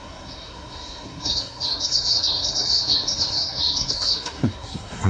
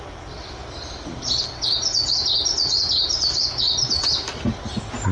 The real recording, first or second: second